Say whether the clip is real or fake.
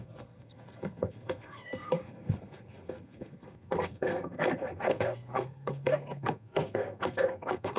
fake